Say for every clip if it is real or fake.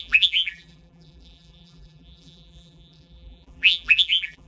fake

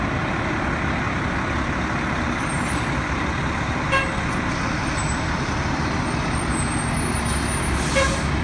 real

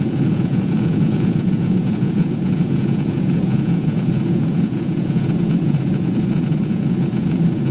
fake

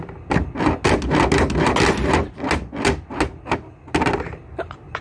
real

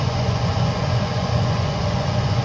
fake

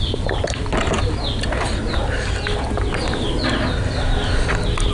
real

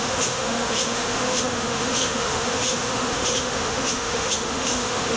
fake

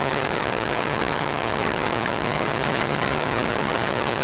fake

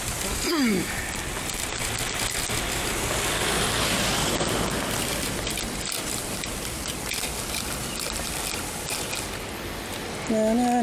real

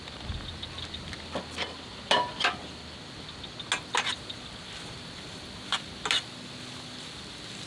real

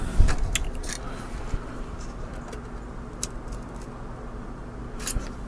real